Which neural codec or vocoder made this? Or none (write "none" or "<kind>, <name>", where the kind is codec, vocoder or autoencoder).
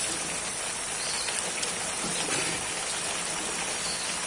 none